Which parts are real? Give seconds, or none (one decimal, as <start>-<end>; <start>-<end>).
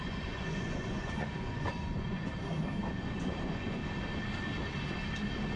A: 2.3-2.9; 3.8-5.6